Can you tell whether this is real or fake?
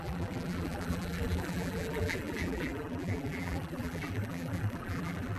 fake